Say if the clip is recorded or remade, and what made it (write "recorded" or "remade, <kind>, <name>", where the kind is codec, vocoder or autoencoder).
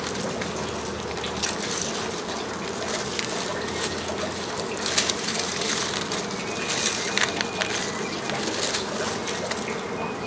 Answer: recorded